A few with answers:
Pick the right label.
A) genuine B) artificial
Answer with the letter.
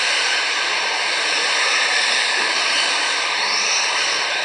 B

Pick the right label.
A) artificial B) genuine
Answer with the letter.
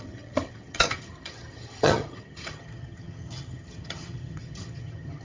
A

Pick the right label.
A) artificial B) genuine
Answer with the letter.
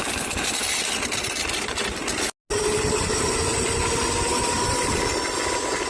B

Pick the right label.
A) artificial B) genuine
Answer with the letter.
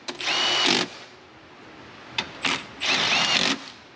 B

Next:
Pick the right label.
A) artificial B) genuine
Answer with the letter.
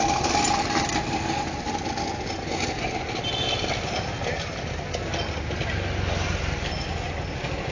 B